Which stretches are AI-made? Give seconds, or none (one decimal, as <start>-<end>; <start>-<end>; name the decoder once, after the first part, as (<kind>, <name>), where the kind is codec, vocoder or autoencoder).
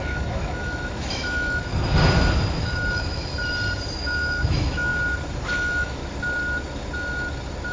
0.0-1.7 (autoencoder, DAC-VAE); 2.6-3.3; 4.0-4.9; 5.4-6.0